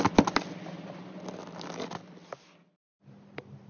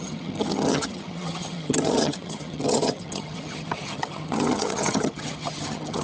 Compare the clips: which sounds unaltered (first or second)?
first